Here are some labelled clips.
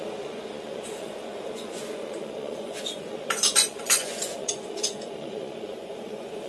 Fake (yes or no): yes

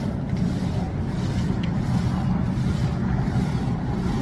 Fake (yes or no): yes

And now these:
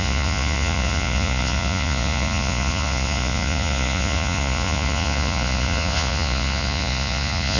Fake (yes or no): yes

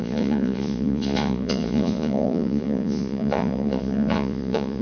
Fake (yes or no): yes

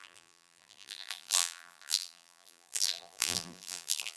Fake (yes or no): yes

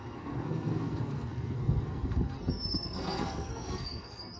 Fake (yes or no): yes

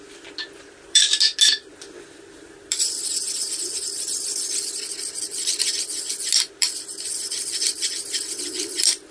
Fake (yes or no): no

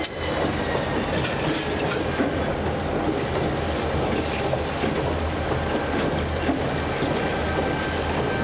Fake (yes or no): no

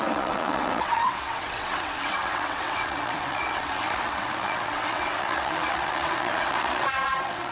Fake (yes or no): yes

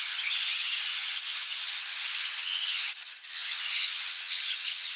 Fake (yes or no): yes